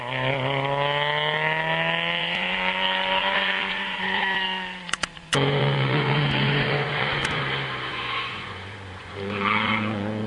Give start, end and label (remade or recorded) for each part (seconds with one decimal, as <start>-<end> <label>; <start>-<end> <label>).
0.0-2.2 recorded; 2.2-7.4 remade; 7.4-7.9 recorded; 7.9-10.3 remade